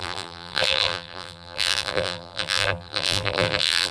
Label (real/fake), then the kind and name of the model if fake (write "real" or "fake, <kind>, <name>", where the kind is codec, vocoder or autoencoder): fake, vocoder, BigVGAN v2